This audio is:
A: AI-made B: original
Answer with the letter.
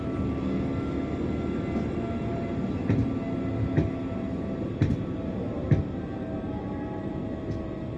B